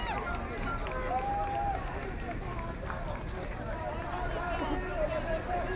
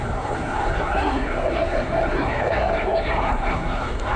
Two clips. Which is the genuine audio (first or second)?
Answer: first